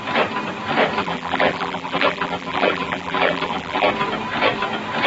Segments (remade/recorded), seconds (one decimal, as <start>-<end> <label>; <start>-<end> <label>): 0.0-1.0 recorded; 1.0-3.9 remade; 3.9-5.1 recorded